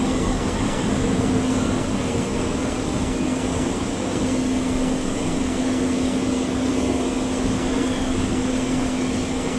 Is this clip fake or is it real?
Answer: fake